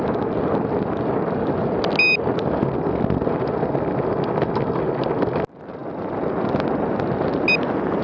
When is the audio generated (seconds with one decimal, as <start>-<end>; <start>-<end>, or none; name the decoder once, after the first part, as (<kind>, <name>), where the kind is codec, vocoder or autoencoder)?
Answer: none